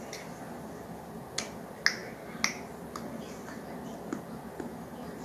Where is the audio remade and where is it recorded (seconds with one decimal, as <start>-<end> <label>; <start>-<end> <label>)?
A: 0.0-5.2 recorded